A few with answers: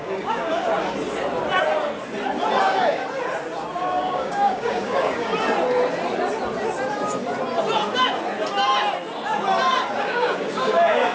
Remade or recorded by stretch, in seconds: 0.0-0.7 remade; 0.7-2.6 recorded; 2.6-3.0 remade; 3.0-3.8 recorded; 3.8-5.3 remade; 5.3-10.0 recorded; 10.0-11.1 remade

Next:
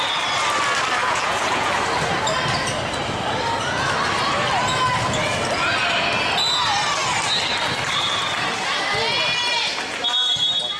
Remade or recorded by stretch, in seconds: 0.0-1.0 recorded; 1.0-1.7 remade; 1.7-10.8 recorded

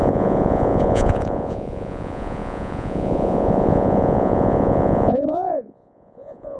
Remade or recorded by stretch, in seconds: 0.0-6.6 remade

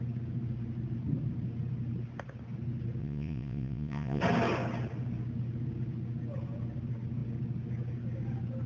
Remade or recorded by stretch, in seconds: 0.0-3.0 recorded; 3.0-4.2 remade; 4.2-8.7 recorded

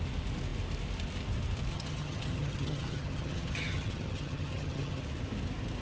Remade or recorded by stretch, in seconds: 0.0-1.7 recorded; 1.7-5.0 remade; 5.0-5.8 recorded

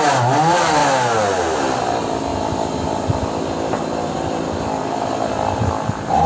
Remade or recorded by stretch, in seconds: 0.0-6.3 recorded

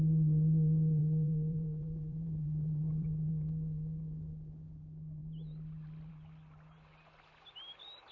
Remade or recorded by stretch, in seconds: 0.0-1.0 recorded; 1.0-3.3 remade; 3.3-8.1 recorded

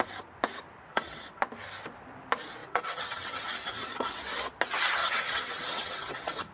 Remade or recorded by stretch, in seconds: 0.0-0.9 recorded; 0.9-1.4 remade; 1.4-2.6 recorded; 2.6-4.2 remade; 4.2-5.0 recorded; 5.0-6.5 remade